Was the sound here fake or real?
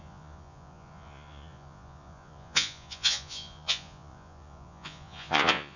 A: fake